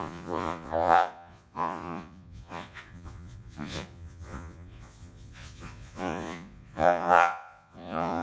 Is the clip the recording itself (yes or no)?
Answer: no